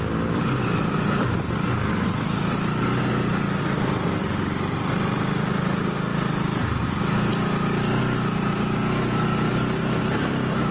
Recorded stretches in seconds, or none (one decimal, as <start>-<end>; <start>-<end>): 0.0-10.7